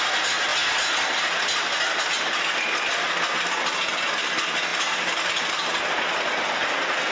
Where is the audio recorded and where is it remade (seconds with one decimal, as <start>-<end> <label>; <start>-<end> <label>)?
0.0-7.1 recorded